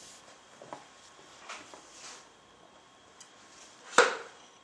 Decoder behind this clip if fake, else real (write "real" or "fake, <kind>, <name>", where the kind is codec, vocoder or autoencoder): real